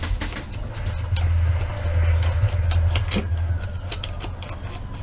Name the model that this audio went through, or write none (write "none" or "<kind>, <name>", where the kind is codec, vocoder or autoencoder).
none